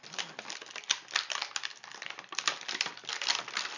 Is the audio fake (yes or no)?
no